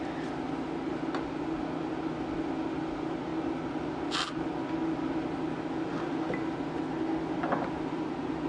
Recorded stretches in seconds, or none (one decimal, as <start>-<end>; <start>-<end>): 0.0-8.5